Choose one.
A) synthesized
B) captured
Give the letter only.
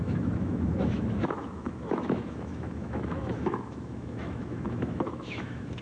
A